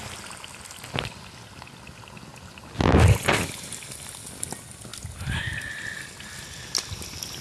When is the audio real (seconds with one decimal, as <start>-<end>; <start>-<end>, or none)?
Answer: 0.0-7.4